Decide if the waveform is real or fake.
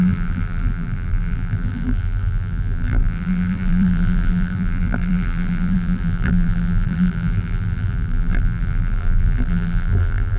fake